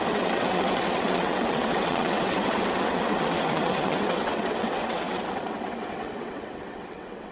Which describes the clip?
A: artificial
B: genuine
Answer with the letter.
A